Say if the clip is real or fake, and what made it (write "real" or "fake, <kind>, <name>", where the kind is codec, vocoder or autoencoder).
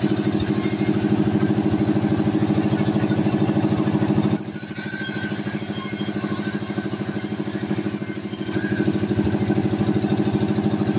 real